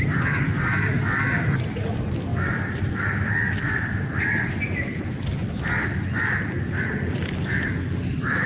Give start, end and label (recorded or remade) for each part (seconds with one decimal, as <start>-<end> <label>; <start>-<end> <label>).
0.0-8.5 recorded